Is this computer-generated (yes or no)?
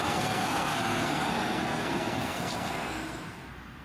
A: yes